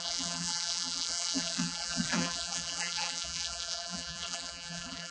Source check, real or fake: fake